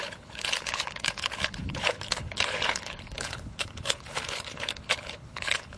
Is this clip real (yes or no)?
no